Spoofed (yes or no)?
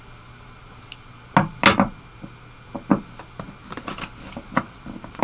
no